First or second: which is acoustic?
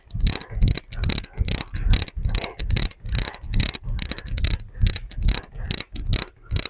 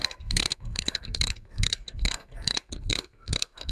first